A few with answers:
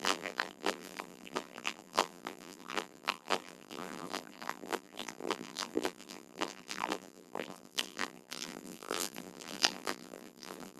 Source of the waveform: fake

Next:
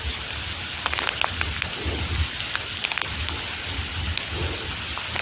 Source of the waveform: real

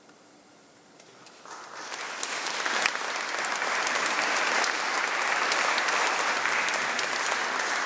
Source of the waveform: fake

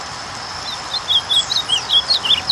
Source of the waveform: real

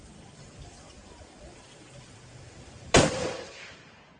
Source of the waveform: fake